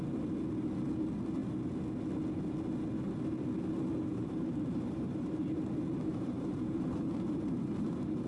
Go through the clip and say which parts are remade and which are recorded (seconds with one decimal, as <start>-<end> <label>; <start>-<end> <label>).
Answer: 0.0-4.2 recorded; 4.2-5.6 remade; 5.6-6.1 recorded; 6.1-8.3 remade